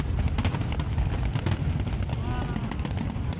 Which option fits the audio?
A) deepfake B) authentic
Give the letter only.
B